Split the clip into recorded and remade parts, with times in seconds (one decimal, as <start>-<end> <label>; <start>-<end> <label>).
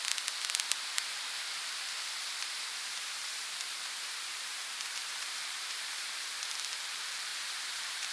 0.0-2.4 recorded; 2.4-6.2 remade; 6.2-7.3 recorded; 7.3-8.1 remade